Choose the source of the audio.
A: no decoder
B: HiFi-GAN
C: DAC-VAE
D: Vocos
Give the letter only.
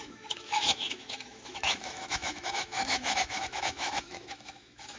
C